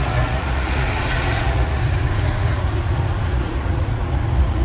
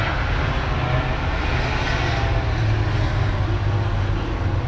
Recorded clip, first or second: second